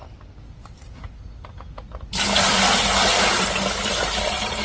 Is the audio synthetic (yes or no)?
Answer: no